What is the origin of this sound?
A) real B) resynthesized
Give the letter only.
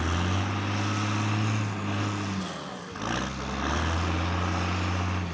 A